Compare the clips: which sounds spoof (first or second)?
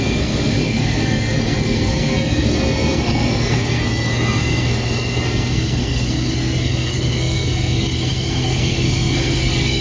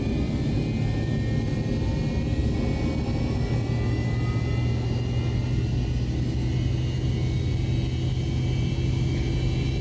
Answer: first